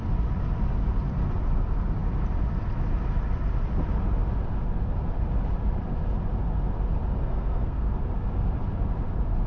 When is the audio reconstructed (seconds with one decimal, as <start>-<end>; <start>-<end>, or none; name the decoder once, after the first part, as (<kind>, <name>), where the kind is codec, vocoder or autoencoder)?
7.2-7.9 (codec, SNAC)